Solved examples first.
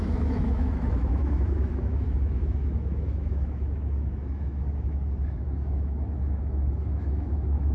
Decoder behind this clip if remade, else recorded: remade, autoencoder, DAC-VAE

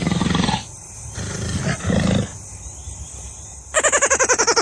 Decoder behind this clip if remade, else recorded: recorded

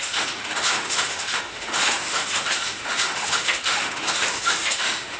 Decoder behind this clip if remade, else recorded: remade, autoencoder, DAC-VAE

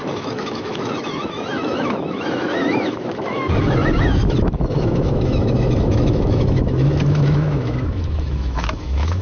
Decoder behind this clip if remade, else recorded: remade, autoencoder, DAC-VAE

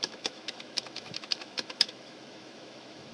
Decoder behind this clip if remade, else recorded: remade, autoencoder, DAC-VAE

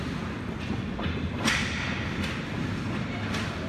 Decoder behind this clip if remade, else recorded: recorded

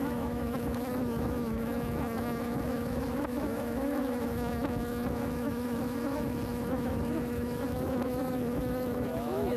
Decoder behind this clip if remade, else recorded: remade, autoencoder, DAC-VAE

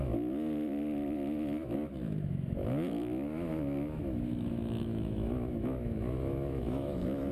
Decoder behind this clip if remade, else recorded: remade, autoencoder, DAC-VAE